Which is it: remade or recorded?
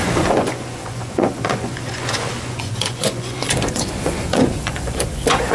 remade